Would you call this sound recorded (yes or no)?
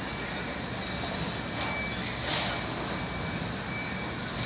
yes